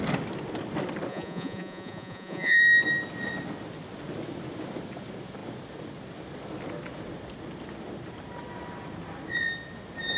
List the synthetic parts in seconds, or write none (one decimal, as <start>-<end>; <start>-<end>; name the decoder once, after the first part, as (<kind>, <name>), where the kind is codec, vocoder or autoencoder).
1.1-2.6 (vocoder, Vocos)